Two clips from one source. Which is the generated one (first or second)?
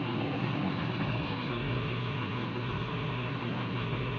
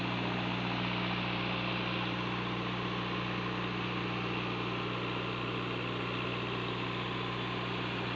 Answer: first